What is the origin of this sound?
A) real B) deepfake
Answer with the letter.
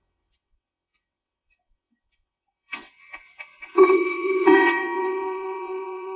B